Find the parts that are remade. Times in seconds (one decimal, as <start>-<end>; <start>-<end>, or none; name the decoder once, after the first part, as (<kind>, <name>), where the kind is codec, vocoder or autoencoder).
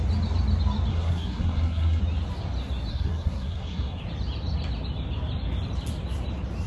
0.9-2.0 (codec, SNAC); 2.9-4.0